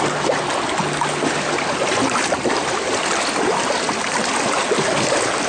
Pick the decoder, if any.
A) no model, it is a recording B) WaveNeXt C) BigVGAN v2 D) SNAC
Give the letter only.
A